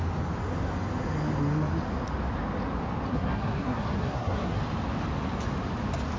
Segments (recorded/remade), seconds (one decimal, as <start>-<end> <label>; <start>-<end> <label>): 0.0-3.1 recorded; 3.1-4.6 remade; 4.6-6.2 recorded